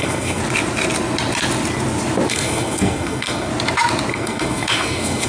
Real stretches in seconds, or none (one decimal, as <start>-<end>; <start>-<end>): 0.4-2.3; 3.5-4.1